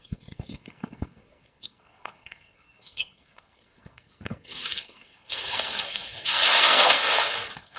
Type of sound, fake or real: fake